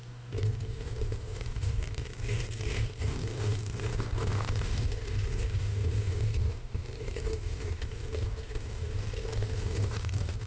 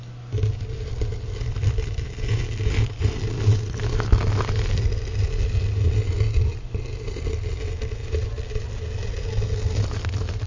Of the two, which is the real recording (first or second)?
second